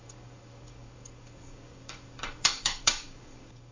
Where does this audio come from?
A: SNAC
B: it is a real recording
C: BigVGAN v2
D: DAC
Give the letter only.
D